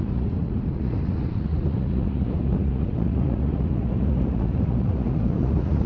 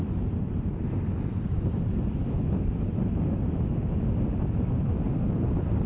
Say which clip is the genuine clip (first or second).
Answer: second